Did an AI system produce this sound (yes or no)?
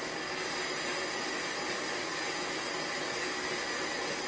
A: no